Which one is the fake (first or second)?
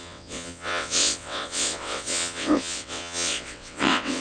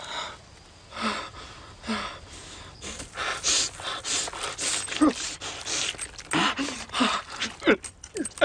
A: first